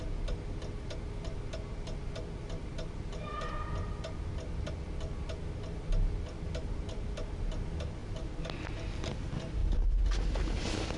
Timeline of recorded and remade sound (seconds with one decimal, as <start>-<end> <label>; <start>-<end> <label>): 0.0-11.0 recorded